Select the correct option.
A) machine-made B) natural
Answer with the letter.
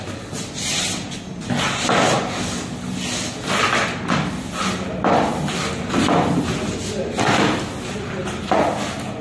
B